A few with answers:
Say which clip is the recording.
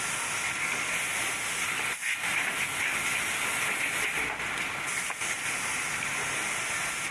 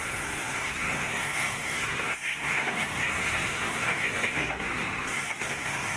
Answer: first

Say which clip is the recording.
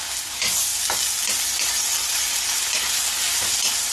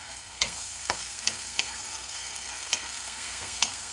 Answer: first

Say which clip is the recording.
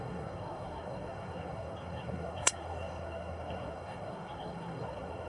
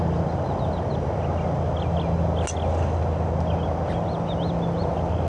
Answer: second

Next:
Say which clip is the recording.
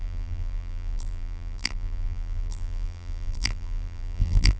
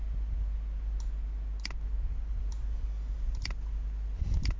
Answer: second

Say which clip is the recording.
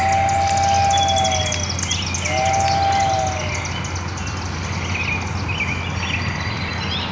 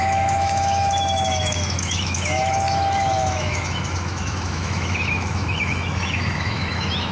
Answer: first